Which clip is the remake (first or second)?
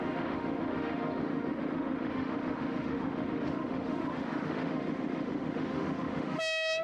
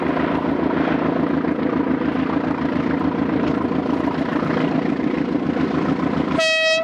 first